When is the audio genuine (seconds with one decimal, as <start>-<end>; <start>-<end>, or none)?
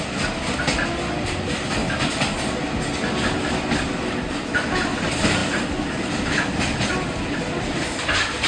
0.0-8.5